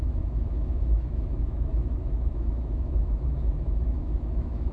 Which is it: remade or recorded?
remade